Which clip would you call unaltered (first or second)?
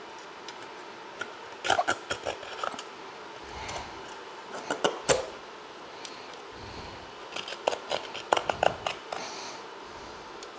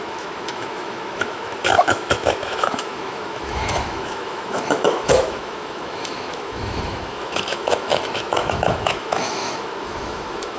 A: first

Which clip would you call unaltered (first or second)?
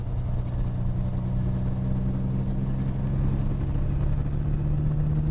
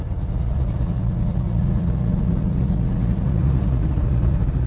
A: first